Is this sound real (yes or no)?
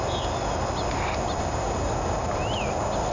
yes